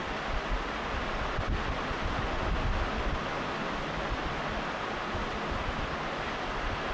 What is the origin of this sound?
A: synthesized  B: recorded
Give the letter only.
B